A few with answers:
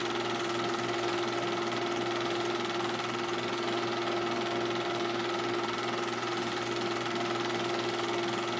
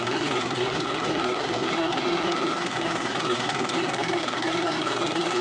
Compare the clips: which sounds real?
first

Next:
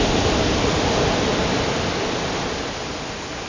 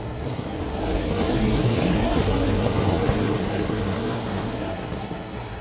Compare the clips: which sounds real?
first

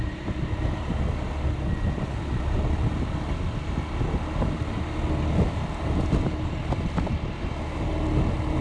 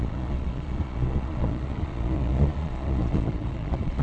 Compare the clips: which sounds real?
first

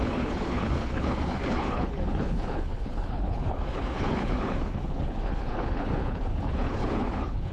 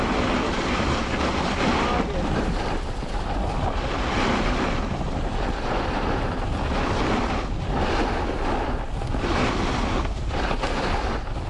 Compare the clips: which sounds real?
second